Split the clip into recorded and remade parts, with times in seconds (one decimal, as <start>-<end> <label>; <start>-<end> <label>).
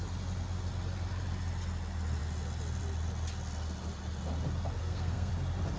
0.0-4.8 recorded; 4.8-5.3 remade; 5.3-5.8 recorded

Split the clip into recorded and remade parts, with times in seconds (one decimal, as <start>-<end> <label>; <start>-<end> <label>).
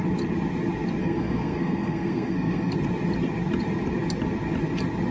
0.0-1.0 recorded; 1.0-2.7 remade; 2.7-5.1 recorded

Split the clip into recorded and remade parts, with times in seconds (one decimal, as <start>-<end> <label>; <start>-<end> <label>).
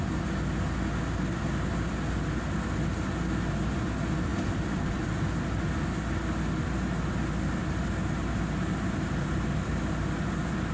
0.0-10.7 recorded